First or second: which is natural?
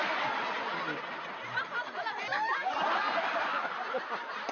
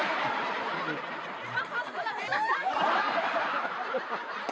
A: first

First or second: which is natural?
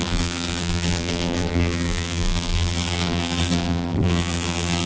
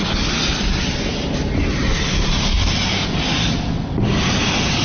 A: second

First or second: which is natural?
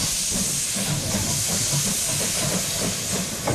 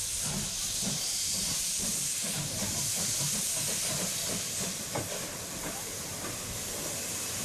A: first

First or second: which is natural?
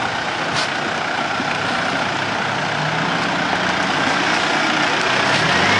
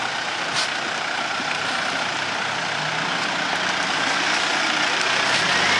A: first